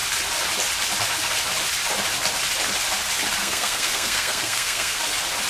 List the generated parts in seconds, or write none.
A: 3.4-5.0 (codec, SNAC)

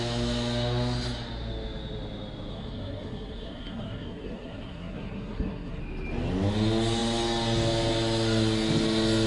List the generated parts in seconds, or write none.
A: 2.5-5.8 (codec, SNAC)

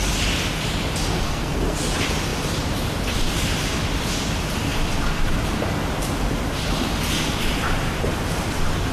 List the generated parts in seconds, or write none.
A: 1.1-1.8 (codec, SNAC)

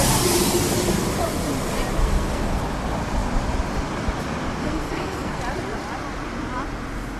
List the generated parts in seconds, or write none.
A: 2.0-2.6 (codec, SNAC); 4.6-5.4

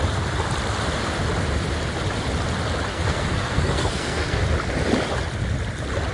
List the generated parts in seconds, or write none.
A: 2.9-4.4 (codec, SNAC)

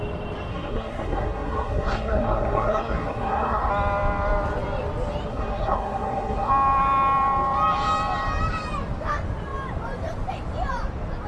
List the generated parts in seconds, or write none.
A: 0.5-3.7 (codec, SNAC); 5.3-6.5

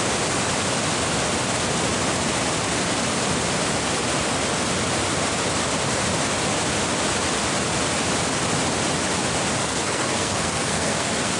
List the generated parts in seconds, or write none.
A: 9.6-11.4 (codec, SNAC)

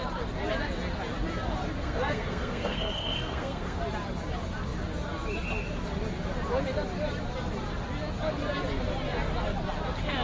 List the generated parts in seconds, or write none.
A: 1.8-3.8 (codec, SNAC)